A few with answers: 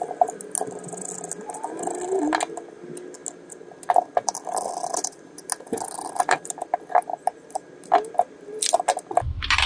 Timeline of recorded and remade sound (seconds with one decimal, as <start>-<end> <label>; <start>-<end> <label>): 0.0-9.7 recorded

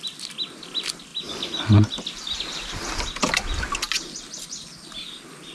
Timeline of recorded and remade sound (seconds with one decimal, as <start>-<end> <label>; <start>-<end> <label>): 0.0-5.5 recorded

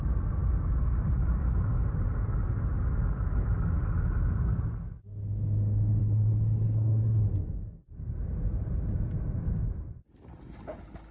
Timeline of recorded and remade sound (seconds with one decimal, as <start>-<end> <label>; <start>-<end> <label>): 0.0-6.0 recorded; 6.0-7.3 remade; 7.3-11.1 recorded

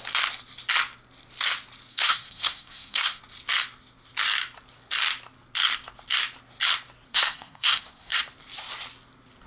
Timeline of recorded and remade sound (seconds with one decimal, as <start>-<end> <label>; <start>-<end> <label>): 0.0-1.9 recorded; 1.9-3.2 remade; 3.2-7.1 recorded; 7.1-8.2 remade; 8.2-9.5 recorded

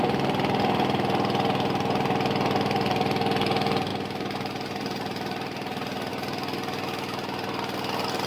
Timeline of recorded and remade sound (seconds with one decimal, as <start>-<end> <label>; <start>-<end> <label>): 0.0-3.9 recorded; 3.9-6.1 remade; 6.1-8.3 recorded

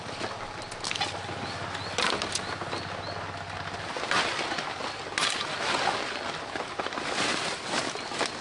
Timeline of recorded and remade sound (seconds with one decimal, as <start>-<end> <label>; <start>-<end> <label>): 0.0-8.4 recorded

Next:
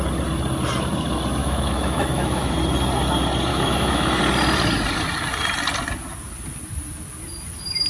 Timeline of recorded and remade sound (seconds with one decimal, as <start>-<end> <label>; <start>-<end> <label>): 0.0-1.4 recorded; 1.4-2.5 remade; 2.5-3.5 recorded; 3.5-4.2 remade; 4.2-7.9 recorded

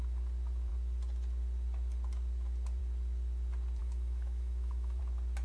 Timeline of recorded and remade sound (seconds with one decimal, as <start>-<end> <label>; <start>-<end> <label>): 0.0-3.8 recorded; 3.8-5.0 remade; 5.0-5.4 recorded